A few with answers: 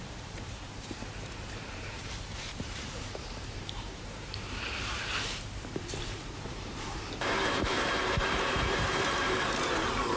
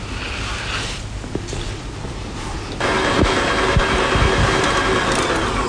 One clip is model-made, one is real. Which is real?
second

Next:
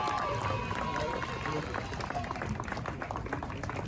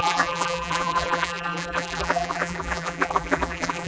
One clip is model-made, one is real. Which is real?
first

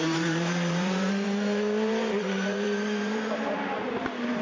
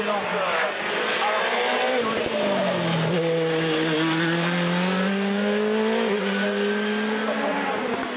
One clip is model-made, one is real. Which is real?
second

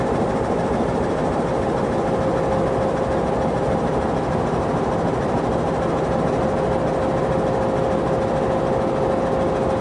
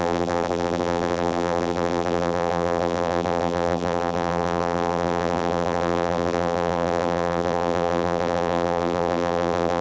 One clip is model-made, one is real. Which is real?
first